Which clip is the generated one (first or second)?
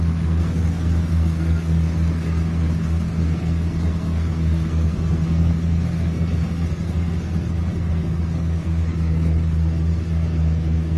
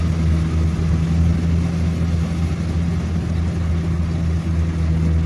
first